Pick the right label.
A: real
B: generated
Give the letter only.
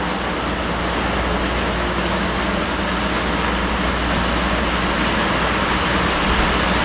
A